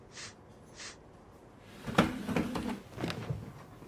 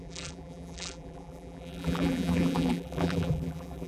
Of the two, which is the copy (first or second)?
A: second